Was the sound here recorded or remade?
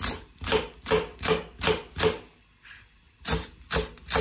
recorded